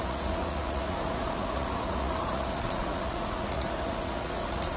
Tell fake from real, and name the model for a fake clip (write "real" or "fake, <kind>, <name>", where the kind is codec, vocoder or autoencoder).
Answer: fake, vocoder, Vocos